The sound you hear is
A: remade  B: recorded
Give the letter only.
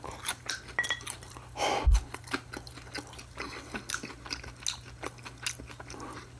B